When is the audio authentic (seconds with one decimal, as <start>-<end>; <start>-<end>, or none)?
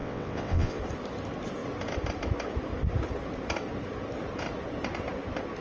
0.8-5.6